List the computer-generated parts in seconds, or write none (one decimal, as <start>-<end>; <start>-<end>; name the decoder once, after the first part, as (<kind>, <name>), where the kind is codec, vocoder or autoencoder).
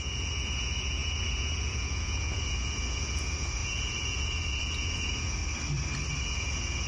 0.0-5.4 (vocoder, Vocos); 6.2-6.9